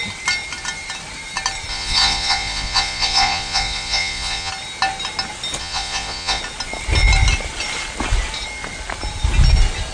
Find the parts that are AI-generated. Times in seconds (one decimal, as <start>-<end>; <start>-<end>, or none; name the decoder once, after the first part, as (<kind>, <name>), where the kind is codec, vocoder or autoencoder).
1.7-4.5 (vocoder, Vocos); 5.6-6.4